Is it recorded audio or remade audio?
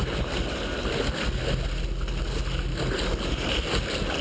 recorded